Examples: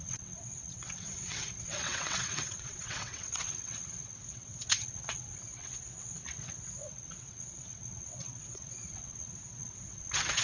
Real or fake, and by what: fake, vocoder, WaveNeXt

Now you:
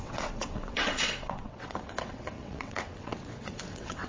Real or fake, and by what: fake, vocoder, WaveNeXt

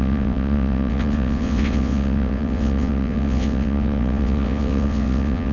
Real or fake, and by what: fake, vocoder, WaveNeXt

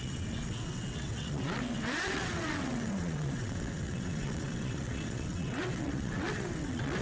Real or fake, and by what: fake, vocoder, WaveNeXt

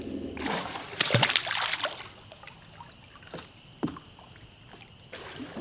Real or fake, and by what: real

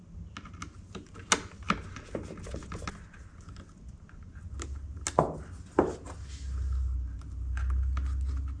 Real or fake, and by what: real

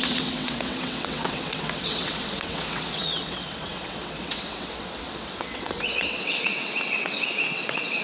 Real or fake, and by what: fake, vocoder, WaveNeXt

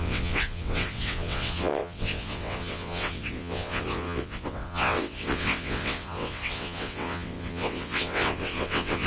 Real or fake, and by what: fake, vocoder, WaveNeXt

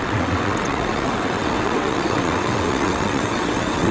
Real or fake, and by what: fake, vocoder, WaveNeXt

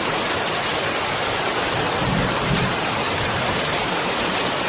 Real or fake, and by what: real